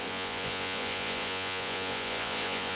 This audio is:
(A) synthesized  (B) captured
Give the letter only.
A